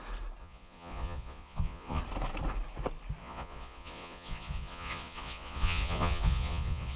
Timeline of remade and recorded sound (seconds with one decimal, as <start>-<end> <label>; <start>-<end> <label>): 0.0-0.4 recorded; 0.4-2.0 remade; 2.0-3.2 recorded; 3.2-7.0 remade